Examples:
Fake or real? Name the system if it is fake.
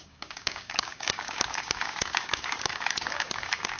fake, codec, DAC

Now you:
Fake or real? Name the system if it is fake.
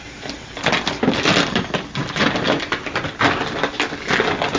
real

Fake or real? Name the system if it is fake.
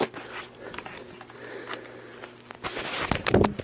real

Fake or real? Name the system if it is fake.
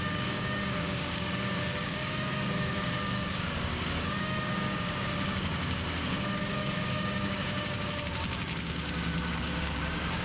fake, codec, DAC